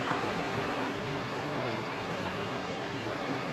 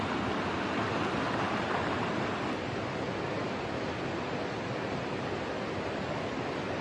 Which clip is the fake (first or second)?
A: first